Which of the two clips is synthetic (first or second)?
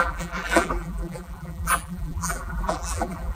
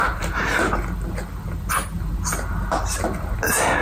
first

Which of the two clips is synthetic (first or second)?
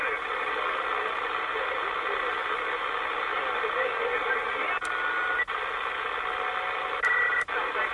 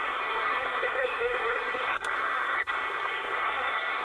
second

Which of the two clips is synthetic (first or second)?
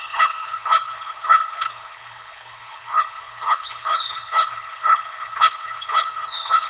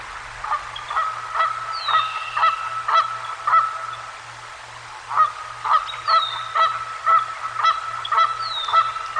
first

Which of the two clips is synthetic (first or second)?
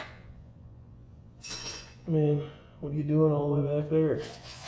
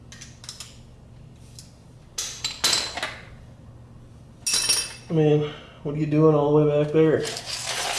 first